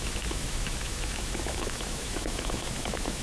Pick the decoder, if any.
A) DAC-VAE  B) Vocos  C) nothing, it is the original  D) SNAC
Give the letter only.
A